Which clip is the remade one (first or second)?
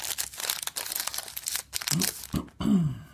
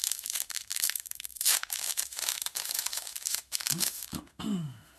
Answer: second